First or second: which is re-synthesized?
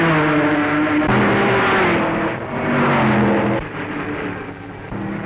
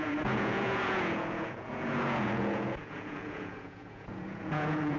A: second